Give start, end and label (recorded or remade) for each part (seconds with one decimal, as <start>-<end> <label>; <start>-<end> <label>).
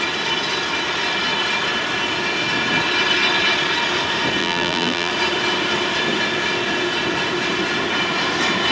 0.0-4.4 recorded; 4.4-5.1 remade; 5.1-8.7 recorded